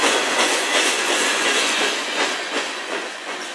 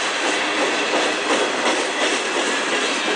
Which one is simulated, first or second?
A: first